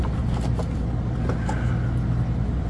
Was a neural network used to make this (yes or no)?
no